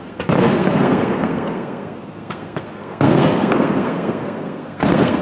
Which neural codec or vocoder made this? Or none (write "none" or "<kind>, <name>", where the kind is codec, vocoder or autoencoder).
codec, SNAC